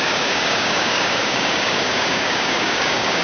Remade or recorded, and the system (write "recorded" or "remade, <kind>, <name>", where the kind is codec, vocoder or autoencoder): remade, codec, DAC